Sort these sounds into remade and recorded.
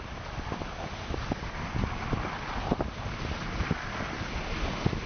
recorded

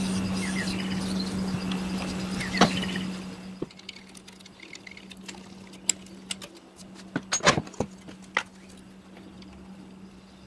recorded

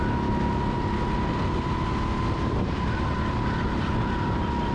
recorded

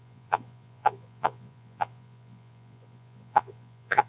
remade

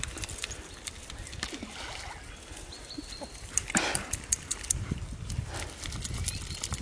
recorded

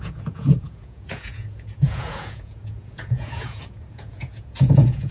remade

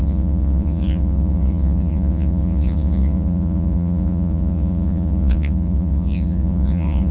remade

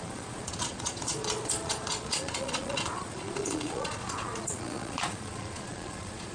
remade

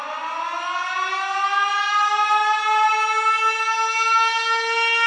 recorded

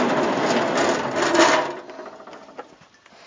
recorded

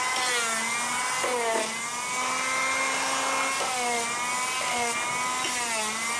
recorded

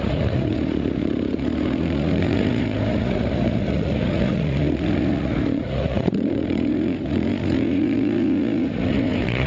remade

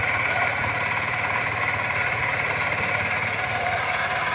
remade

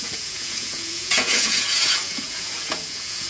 remade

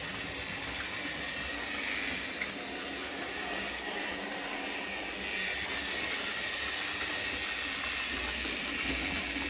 recorded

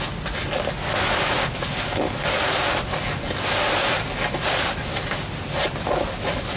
recorded